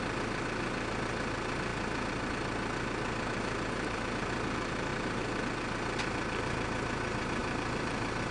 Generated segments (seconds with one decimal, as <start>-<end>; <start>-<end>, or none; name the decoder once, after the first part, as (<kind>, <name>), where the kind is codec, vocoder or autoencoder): 4.9-5.4 (vocoder, BigVGAN v2); 7.4-8.3